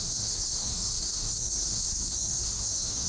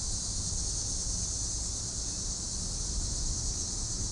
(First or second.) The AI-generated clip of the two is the first